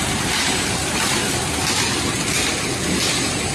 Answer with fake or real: real